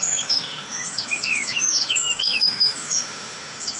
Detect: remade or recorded remade